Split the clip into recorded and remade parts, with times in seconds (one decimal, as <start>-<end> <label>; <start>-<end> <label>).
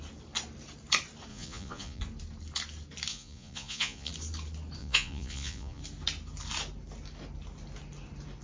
0.0-1.3 recorded; 1.3-2.0 remade; 2.0-3.1 recorded; 3.1-4.1 remade; 4.1-4.8 recorded; 4.8-5.8 remade; 5.8-8.4 recorded